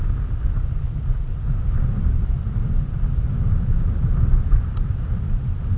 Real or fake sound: real